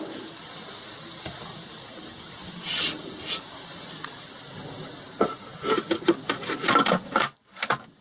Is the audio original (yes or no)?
yes